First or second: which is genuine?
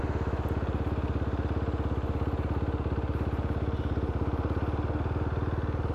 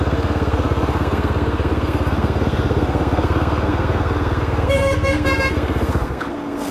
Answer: first